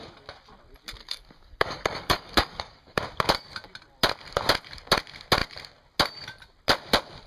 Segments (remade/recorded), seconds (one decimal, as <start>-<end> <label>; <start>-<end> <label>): 0.0-1.0 recorded; 1.0-3.0 remade; 3.0-7.3 recorded